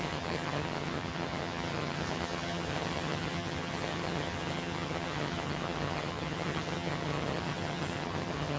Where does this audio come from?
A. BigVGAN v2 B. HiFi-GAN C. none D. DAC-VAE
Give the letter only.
B